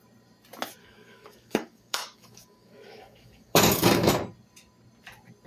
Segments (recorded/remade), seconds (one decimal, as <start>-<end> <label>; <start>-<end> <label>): 0.0-0.8 recorded; 0.8-4.1 remade; 4.1-5.5 recorded